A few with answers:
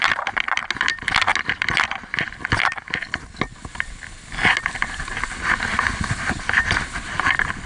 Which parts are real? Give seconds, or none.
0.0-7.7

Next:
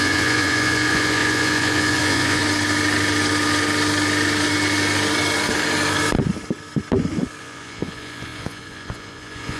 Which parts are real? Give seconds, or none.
2.4-7.4

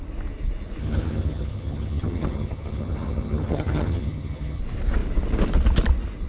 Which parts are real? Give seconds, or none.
0.0-0.8; 4.6-6.3

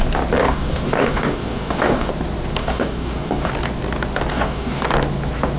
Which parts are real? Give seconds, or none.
0.0-0.4; 2.1-2.6; 3.5-4.3; 4.8-5.6

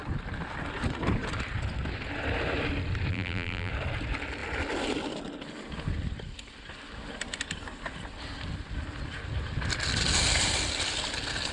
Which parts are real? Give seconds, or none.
0.0-3.1; 3.7-11.5

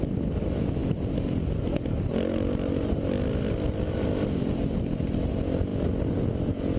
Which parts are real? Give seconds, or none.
0.0-6.8

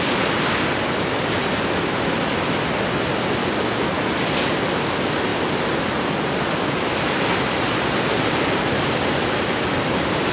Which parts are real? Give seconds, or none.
0.0-10.3

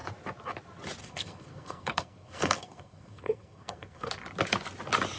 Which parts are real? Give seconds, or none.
0.0-1.0; 4.1-5.2